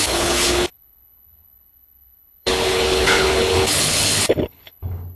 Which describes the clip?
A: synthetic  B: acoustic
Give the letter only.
A